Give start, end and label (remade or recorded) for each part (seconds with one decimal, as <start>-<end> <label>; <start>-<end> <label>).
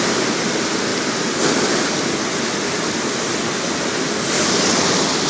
0.0-0.9 recorded; 0.9-1.6 remade; 1.6-5.3 recorded